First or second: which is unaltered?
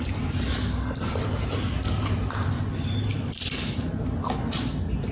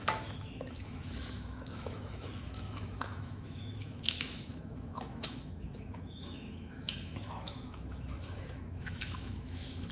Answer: first